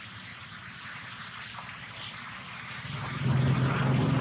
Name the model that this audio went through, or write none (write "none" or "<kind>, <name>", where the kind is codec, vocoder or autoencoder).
none